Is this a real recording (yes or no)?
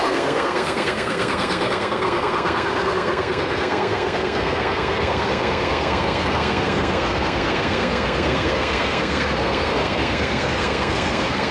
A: no